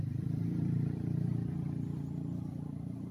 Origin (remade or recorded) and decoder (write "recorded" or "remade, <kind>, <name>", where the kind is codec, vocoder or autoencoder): remade, vocoder, BigVGAN v2